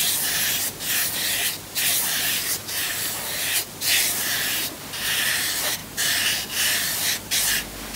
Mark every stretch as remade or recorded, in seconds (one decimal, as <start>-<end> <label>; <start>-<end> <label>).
0.0-2.0 recorded; 2.0-3.4 remade; 3.4-8.0 recorded